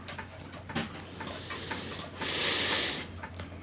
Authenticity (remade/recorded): recorded